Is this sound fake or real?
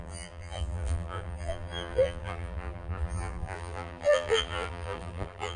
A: fake